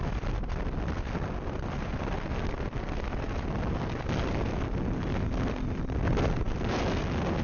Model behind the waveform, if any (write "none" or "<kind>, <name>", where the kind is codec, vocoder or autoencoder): none